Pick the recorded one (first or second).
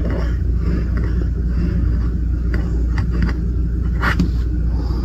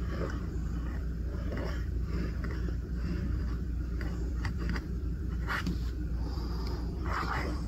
first